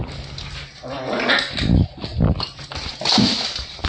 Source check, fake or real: real